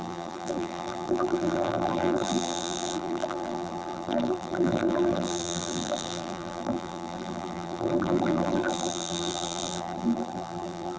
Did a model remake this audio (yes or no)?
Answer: yes